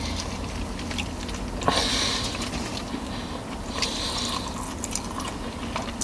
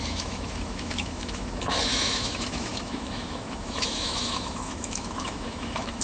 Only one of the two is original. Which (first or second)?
first